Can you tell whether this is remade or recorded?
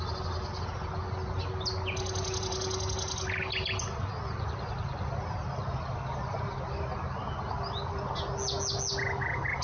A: recorded